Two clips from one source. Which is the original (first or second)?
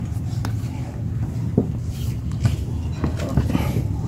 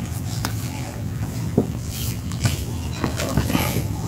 first